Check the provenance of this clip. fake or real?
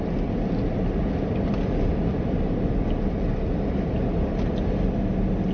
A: real